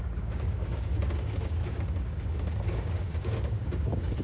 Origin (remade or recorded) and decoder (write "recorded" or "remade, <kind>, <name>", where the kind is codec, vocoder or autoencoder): remade, codec, DAC